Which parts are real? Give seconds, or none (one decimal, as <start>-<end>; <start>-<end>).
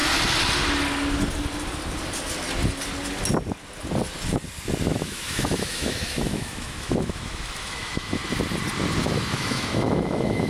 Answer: 0.0-4.8; 8.2-9.0